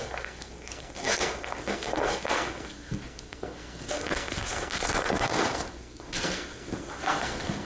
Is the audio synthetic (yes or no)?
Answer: yes